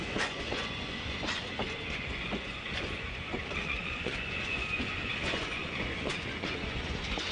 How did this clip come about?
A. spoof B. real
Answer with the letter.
A